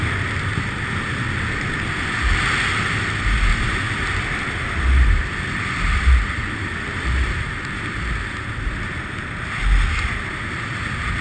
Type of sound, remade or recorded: recorded